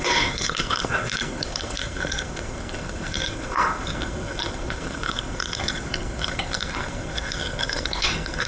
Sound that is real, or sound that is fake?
fake